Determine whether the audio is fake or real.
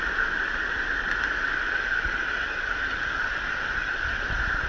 real